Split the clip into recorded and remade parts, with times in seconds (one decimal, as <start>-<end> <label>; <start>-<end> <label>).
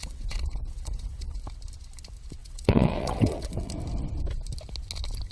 0.0-1.4 remade; 1.4-2.4 recorded; 2.4-3.7 remade; 3.7-5.3 recorded